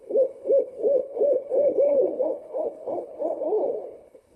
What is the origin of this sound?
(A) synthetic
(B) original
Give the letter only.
A